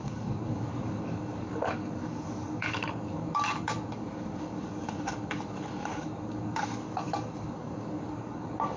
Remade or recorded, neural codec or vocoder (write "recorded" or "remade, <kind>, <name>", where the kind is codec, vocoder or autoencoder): remade, codec, DAC